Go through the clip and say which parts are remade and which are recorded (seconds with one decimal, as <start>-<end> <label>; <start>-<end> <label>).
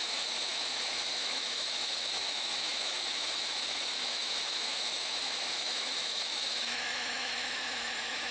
0.0-8.3 remade